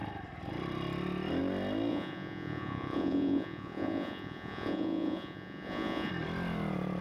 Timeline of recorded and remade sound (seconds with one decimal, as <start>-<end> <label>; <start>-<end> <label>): 0.0-1.9 recorded; 1.9-6.1 remade; 6.1-7.0 recorded